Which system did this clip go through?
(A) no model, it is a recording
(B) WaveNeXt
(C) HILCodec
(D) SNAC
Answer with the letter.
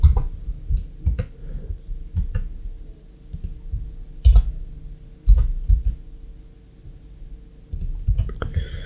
A